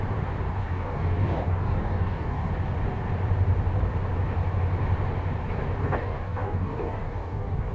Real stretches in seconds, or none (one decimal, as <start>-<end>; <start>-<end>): 0.0-0.6; 2.5-5.8